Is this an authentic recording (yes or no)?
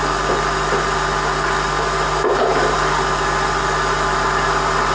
yes